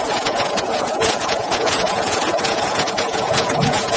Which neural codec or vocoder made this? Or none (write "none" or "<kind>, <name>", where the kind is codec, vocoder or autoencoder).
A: vocoder, Vocos